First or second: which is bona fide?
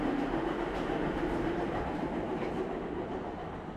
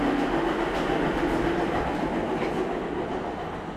second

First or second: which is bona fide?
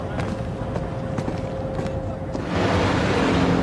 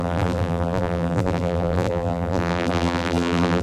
first